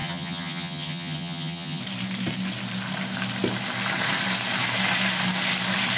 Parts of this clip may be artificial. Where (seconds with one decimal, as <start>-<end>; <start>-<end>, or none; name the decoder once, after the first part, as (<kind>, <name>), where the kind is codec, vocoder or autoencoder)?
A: 0.0-1.8 (vocoder, HiFi-GAN)